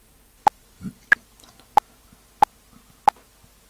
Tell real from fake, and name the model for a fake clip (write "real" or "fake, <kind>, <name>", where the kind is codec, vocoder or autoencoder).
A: real